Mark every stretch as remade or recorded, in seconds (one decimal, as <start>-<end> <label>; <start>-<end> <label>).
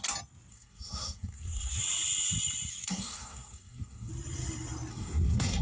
0.0-0.5 recorded; 0.5-1.8 remade; 1.8-2.7 recorded; 2.7-4.1 remade; 4.1-4.9 recorded; 4.9-5.6 remade